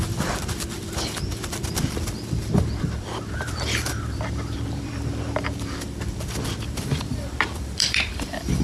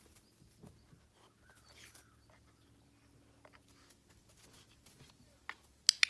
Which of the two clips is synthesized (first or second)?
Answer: first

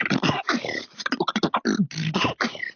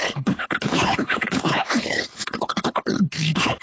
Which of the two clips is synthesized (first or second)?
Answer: second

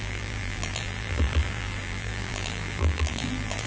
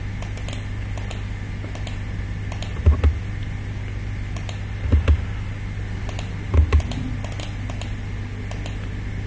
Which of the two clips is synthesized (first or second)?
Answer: first